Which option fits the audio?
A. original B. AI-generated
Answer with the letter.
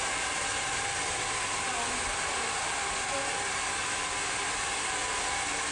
A